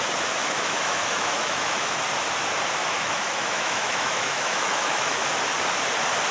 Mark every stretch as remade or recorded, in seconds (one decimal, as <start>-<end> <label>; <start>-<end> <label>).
0.0-0.4 recorded; 0.4-2.0 remade; 2.0-2.8 recorded; 2.8-5.3 remade; 5.3-6.3 recorded